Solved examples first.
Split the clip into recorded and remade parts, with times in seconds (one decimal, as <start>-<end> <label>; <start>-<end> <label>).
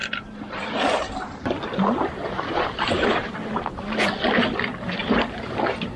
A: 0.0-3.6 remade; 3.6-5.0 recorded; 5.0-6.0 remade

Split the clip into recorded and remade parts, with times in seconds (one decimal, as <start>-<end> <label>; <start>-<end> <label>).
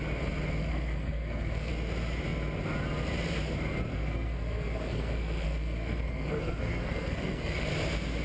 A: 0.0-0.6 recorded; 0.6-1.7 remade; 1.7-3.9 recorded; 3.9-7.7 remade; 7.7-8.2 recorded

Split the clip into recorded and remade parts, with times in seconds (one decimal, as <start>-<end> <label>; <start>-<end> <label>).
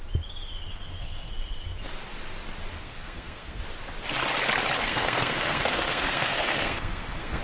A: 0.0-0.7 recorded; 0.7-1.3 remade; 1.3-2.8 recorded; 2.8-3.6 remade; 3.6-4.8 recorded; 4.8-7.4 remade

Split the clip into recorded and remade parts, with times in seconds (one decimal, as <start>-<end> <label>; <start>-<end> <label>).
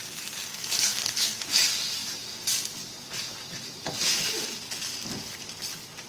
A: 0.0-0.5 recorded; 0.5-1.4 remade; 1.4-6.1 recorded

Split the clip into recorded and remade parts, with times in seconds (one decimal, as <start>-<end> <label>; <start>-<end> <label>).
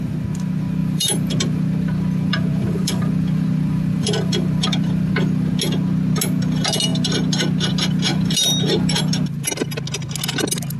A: 0.0-0.8 recorded; 0.8-5.5 remade; 5.5-8.1 recorded; 8.1-9.0 remade; 9.0-10.8 recorded